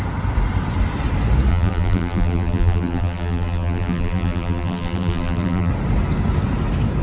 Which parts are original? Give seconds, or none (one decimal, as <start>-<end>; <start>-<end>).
0.0-1.5; 5.7-7.0